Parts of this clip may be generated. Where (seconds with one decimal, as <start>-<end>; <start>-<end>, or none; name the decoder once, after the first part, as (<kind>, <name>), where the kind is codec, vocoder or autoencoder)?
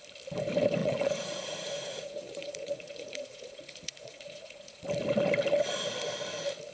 0.8-4.8 (vocoder, Vocos)